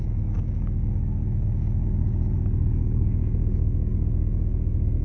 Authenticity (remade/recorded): remade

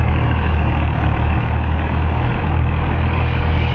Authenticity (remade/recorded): remade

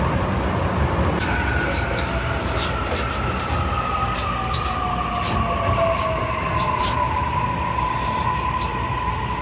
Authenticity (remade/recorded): recorded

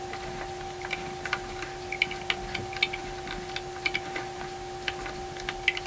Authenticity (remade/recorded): recorded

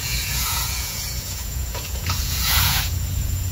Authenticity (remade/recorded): remade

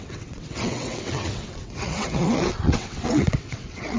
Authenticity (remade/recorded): remade